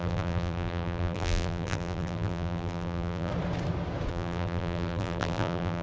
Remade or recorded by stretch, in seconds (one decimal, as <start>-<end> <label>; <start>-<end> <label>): 0.0-3.3 remade; 3.3-4.1 recorded; 4.1-5.8 remade